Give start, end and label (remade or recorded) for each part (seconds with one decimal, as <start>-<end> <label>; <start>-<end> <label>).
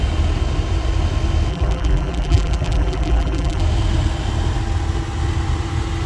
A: 0.0-1.5 recorded; 1.5-3.6 remade; 3.6-6.1 recorded